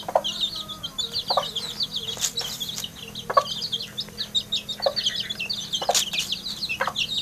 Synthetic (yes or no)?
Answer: no